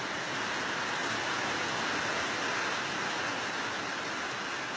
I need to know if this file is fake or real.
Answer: real